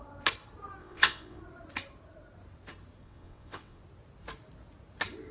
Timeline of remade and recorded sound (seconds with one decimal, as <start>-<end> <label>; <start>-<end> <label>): 0.0-0.8 recorded; 0.8-1.4 remade; 1.4-3.0 recorded; 3.0-3.8 remade; 3.8-5.3 recorded